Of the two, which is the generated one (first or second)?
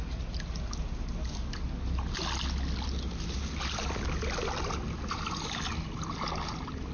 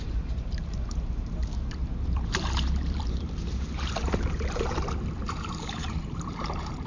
second